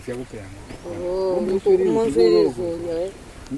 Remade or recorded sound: recorded